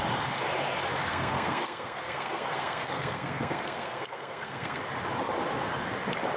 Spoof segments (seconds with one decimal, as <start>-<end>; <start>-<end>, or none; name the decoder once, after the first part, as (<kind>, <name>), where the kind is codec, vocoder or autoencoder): 1.1-4.8 (codec, SNAC)